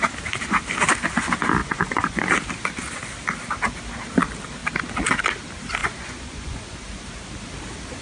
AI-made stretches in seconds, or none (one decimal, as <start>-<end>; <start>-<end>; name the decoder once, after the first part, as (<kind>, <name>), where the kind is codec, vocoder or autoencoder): 1.6-2.2 (vocoder, Vocos); 5.8-7.0